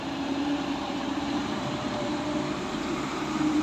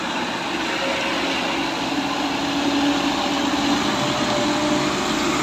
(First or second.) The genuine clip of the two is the second